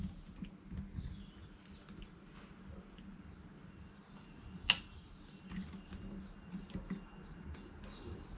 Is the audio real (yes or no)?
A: yes